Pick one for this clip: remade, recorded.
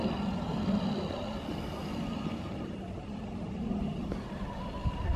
recorded